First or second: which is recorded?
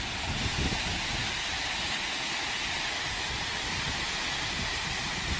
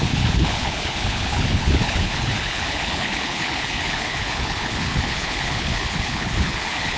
first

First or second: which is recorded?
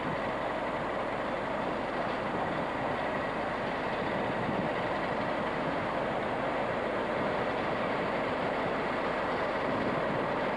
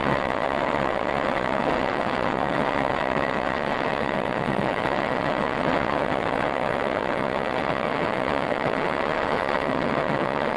first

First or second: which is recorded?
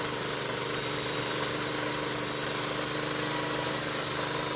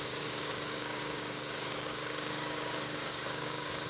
first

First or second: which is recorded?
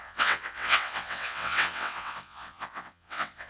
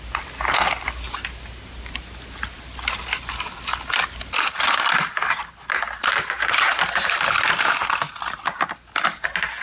second